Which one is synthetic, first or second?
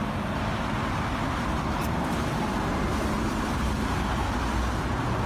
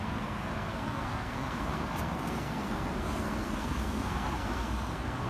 second